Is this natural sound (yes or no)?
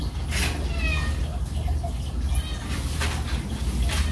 yes